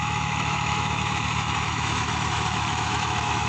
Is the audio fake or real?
fake